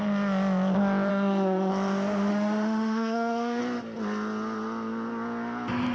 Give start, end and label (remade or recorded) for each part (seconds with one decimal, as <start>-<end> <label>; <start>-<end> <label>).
0.0-1.1 recorded; 1.1-1.7 remade; 1.7-2.3 recorded; 2.3-3.6 remade; 3.6-5.9 recorded